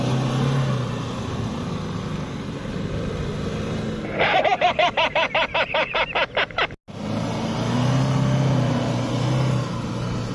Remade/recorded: recorded